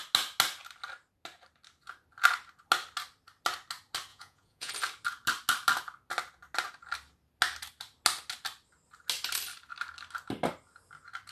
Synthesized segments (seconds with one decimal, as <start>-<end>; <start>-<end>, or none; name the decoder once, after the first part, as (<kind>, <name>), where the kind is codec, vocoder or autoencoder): 4.1-4.7 (vocoder, Vocos)

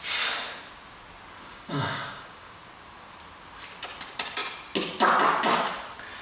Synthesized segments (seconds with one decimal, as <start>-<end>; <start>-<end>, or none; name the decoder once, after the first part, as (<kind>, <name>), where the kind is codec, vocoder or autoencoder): 1.5-2.6 (codec, DAC)

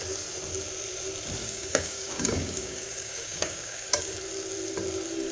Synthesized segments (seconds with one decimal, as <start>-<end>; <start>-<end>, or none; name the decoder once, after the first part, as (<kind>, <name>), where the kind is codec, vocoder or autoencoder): 1.4-4.0 (codec, DAC)

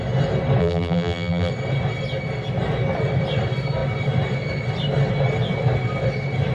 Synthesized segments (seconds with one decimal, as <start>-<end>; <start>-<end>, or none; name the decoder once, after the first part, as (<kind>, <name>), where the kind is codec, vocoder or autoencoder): 0.6-1.5 (vocoder, BigVGAN v2)